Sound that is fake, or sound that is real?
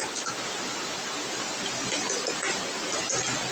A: real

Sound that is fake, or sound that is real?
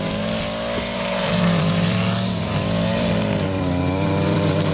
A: fake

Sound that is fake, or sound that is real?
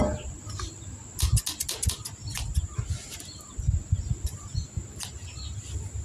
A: real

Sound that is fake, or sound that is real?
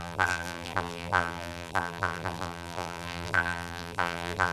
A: fake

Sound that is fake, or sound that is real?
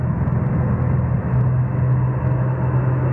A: real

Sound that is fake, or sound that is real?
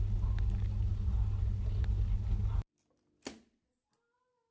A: real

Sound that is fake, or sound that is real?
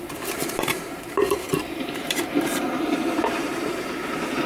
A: fake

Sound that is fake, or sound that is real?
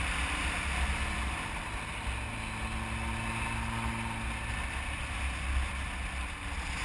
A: real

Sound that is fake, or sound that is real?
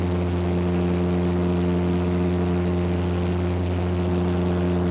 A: real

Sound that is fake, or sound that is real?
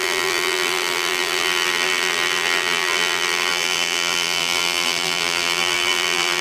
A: fake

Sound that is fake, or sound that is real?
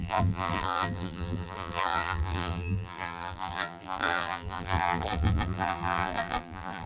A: fake